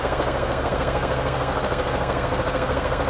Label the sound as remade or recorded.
remade